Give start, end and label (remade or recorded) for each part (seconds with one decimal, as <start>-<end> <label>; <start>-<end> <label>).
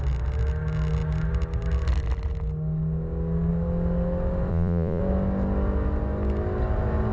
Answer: 0.0-4.5 recorded; 4.5-5.0 remade; 5.0-7.1 recorded